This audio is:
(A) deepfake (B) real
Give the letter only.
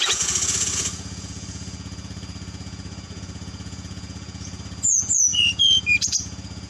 A